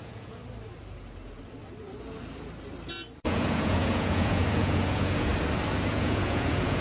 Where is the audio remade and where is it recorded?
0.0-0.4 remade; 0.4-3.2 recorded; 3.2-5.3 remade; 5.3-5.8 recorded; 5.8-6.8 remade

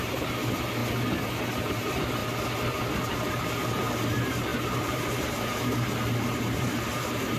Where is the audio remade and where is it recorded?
0.0-0.8 remade; 0.8-1.6 recorded; 1.6-2.2 remade; 2.2-3.1 recorded; 3.1-7.4 remade

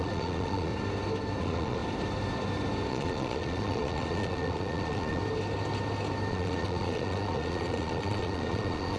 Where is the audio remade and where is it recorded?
0.0-0.7 remade; 0.7-1.4 recorded; 1.4-1.8 remade; 1.8-2.9 recorded; 2.9-5.2 remade; 5.2-6.3 recorded; 6.3-9.0 remade

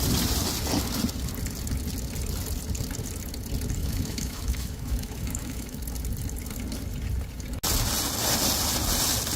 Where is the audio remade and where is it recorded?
0.0-3.8 recorded; 3.8-5.8 remade; 5.8-9.4 recorded

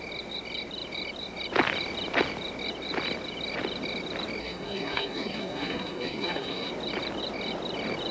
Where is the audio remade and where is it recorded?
0.0-4.4 recorded; 4.4-6.7 remade; 6.7-8.1 recorded